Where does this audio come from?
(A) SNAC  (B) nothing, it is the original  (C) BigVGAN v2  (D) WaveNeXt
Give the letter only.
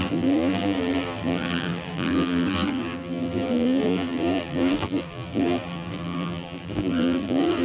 C